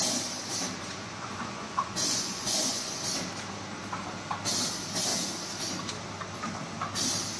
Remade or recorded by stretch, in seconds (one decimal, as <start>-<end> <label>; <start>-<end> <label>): 0.0-0.8 recorded; 0.8-3.0 remade; 3.0-7.4 recorded